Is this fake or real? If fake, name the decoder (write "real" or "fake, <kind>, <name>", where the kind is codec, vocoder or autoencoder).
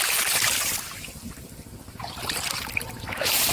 fake, vocoder, BigVGAN v2